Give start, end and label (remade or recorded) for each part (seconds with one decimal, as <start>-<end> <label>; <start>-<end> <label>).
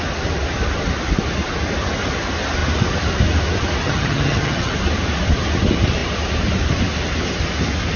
0.0-3.8 recorded; 3.8-4.7 remade; 4.7-8.0 recorded